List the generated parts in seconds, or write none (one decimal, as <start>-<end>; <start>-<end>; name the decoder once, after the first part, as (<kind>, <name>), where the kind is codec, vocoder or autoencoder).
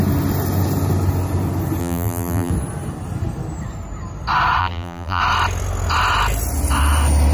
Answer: 1.8-2.5 (vocoder, BigVGAN v2); 4.6-5.2